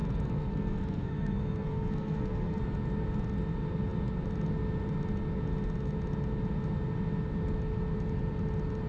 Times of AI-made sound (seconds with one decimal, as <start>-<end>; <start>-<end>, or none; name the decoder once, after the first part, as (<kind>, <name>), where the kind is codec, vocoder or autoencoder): 0.0-2.6 (codec, SNAC)